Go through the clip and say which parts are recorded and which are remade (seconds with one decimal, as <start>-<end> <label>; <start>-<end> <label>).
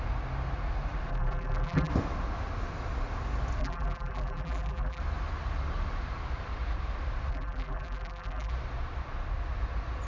0.0-1.1 recorded; 1.1-1.9 remade; 1.9-3.6 recorded; 3.6-5.0 remade; 5.0-7.3 recorded; 7.3-8.5 remade; 8.5-10.1 recorded